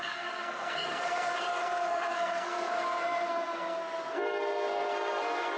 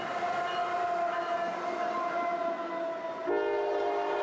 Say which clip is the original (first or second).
second